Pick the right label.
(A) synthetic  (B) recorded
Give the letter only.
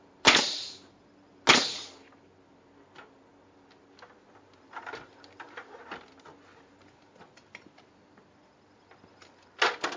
B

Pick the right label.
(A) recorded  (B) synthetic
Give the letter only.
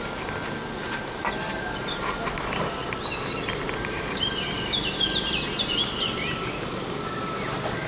A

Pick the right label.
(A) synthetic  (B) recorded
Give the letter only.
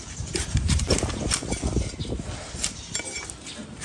B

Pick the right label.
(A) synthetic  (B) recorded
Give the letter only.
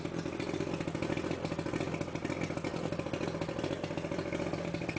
B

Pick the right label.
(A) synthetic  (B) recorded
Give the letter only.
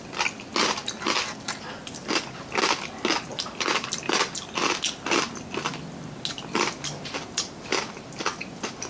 B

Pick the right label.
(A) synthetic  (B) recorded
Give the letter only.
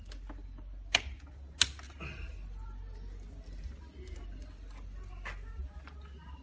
B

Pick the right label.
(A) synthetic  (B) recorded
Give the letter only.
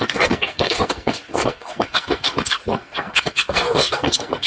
A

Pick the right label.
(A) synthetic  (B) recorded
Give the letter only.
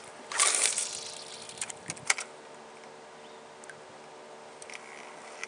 B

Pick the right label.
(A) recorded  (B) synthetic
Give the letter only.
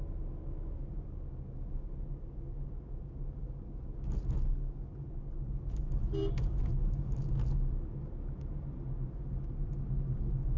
A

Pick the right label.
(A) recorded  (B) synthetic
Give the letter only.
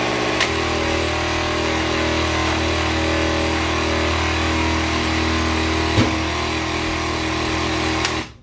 A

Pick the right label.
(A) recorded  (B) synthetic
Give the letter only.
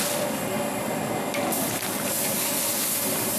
A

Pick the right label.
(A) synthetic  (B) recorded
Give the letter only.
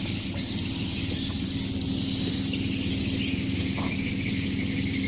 B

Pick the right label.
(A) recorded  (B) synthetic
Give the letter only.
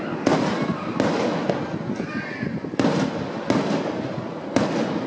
A